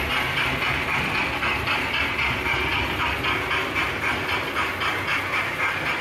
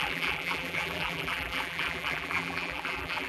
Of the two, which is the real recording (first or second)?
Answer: first